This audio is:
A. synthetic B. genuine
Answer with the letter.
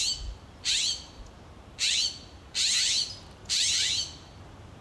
B